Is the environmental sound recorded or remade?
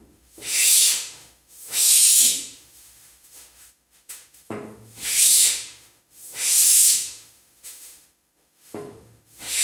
remade